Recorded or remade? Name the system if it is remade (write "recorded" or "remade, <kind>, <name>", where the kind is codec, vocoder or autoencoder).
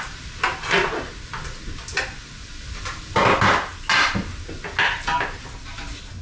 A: recorded